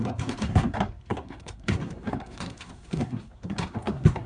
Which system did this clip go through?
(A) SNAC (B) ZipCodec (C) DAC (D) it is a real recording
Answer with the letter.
A